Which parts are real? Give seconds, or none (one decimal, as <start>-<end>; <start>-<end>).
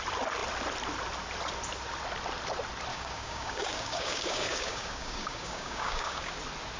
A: 0.0-2.9; 6.3-6.8